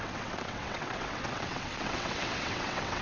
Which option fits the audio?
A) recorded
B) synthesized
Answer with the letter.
B